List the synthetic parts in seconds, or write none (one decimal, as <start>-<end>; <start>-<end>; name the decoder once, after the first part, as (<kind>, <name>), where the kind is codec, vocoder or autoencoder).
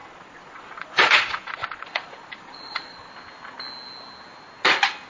0.0-3.1 (vocoder, Vocos)